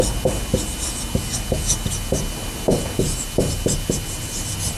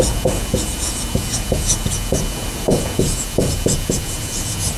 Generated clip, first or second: second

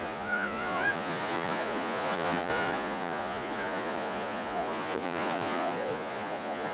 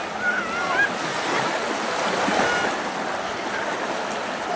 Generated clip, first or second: first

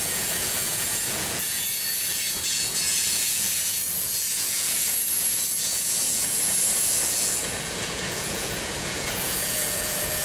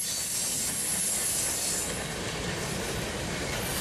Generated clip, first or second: first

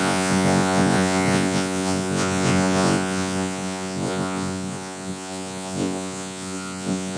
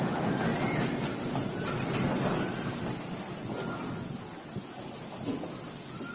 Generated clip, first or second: first